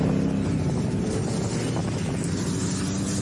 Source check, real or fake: real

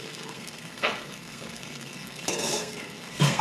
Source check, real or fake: fake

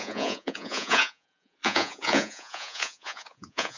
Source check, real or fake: fake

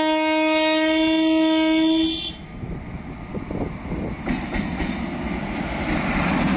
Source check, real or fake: real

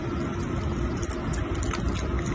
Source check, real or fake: real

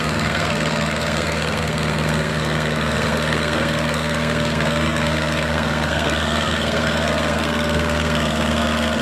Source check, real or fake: fake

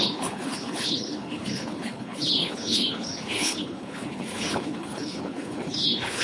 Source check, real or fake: fake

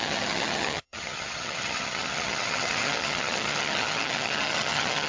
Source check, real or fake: fake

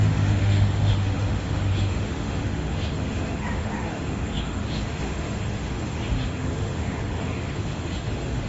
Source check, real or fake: fake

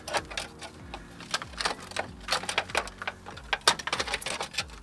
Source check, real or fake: real